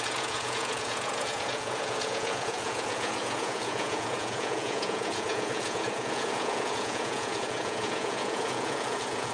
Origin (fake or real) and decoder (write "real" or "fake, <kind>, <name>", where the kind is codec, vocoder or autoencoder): fake, vocoder, Vocos